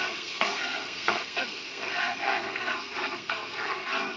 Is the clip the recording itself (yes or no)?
no